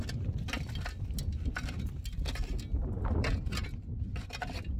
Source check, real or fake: real